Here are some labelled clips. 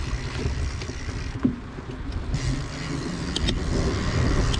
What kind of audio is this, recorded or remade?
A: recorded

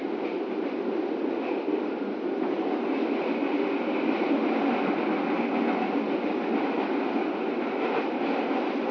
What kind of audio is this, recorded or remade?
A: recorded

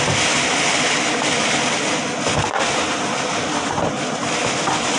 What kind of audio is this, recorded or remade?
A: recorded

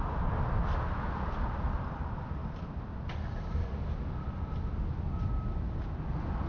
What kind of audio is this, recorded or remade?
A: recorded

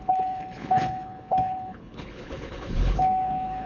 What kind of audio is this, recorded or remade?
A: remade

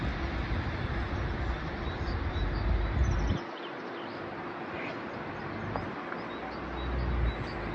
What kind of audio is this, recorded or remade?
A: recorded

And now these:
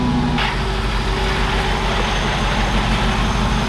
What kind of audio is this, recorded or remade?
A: recorded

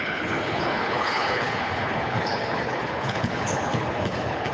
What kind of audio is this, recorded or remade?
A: remade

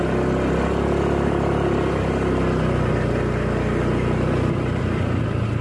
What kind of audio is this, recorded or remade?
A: recorded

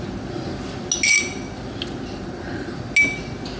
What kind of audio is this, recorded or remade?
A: recorded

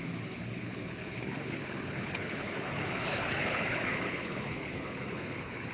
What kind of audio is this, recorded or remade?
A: remade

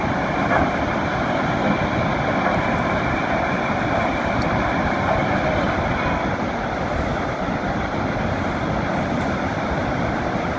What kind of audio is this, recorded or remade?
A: recorded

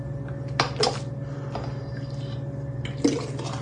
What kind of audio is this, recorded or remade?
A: recorded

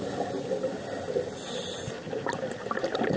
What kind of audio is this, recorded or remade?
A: recorded